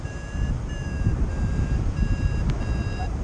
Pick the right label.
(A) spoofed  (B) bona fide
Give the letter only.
A